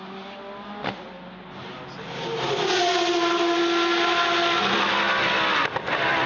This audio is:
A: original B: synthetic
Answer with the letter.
A